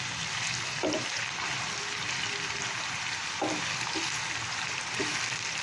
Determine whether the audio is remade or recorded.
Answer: recorded